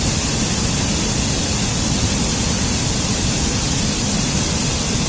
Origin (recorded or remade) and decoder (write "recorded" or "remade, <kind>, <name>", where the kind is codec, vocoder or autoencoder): recorded